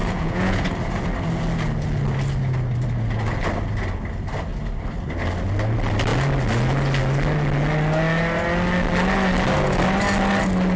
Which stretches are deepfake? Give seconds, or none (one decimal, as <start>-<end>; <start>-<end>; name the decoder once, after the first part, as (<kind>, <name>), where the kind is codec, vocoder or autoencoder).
0.0-0.7 (vocoder, Vocos)